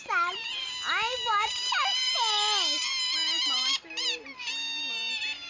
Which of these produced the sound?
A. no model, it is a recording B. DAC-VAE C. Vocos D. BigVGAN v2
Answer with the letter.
A